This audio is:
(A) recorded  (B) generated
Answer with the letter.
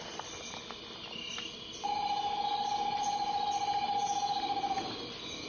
A